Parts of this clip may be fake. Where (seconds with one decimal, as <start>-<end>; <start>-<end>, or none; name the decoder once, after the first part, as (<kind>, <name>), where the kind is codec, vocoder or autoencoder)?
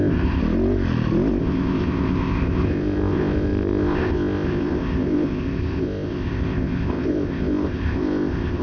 0.0-0.4 (codec, ZipCodec); 1.4-8.6